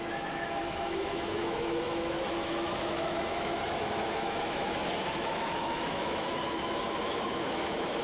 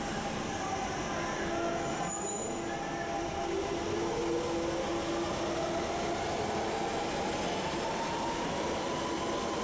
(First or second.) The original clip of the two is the second